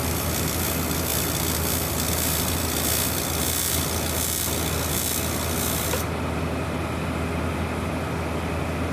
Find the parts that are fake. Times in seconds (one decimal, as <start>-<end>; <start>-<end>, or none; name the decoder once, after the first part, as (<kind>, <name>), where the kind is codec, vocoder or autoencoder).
1.1-3.4 (vocoder, BigVGAN v2)